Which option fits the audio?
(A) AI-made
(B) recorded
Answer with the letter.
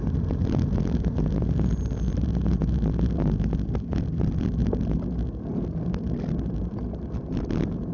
B